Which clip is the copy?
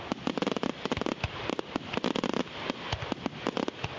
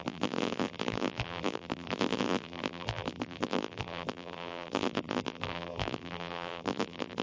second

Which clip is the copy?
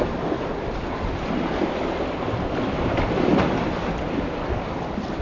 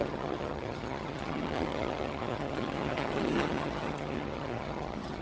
second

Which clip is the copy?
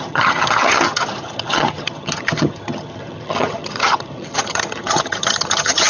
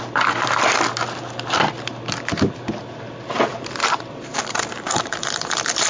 first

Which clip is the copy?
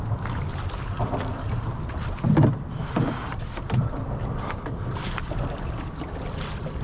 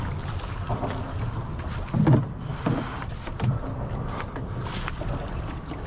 first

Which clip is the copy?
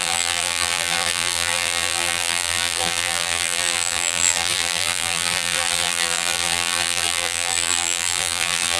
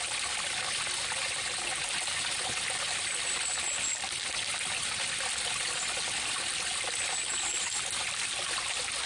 first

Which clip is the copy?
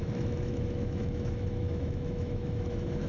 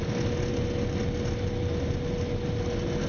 first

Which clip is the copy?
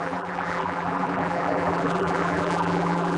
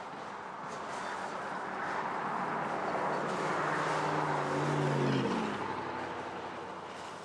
first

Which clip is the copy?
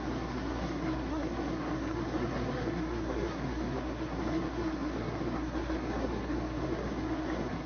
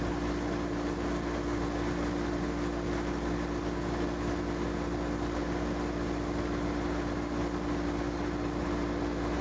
first